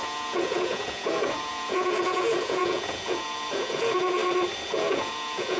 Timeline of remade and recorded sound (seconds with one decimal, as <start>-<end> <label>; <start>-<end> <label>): 0.0-4.2 remade; 4.2-4.7 recorded; 4.7-5.6 remade